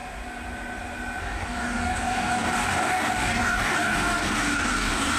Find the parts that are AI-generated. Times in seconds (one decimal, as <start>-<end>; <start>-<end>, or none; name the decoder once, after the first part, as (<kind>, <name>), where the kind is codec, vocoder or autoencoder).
1.2-5.2 (codec, DAC)